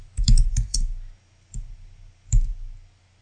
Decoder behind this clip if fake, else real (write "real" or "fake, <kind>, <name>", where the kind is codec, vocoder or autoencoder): real